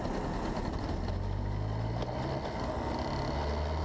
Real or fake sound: real